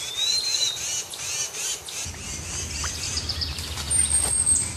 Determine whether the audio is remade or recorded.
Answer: recorded